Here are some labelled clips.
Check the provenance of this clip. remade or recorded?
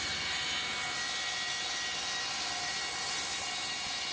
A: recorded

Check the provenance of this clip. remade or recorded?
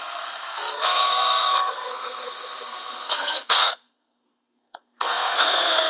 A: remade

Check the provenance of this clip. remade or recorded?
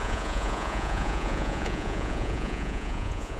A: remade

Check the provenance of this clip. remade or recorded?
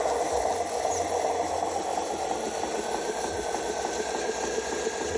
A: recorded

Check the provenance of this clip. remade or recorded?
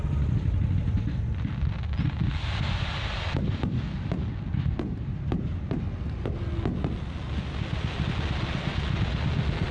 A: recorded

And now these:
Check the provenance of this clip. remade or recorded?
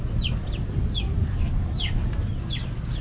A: recorded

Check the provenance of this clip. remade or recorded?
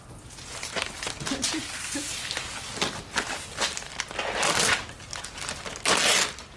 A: recorded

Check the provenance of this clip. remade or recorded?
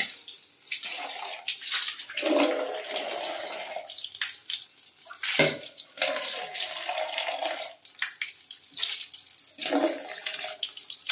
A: recorded